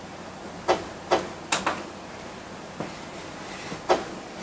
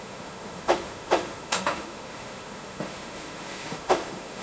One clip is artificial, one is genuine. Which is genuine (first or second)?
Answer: first